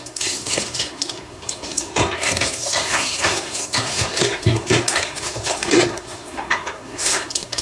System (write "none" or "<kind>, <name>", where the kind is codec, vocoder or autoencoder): codec, SNAC